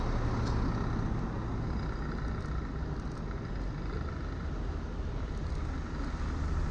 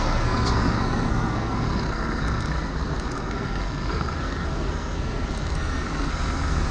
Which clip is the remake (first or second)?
second